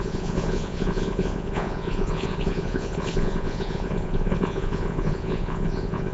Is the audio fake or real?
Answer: fake